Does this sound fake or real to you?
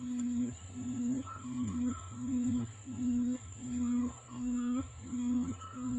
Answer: fake